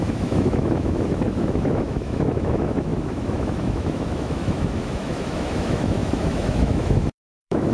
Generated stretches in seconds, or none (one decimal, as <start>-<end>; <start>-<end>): 0.0-7.7